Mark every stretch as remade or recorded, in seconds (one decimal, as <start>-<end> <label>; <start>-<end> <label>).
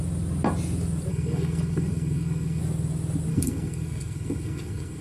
0.0-1.1 recorded; 1.1-2.6 remade; 2.6-3.3 recorded; 3.3-5.0 remade